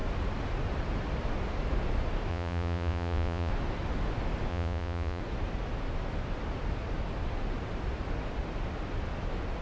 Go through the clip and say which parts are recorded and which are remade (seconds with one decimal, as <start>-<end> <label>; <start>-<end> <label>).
0.0-2.3 recorded; 2.3-3.5 remade; 3.5-4.5 recorded; 4.5-5.2 remade; 5.2-9.6 recorded